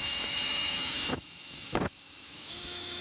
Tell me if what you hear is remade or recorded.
remade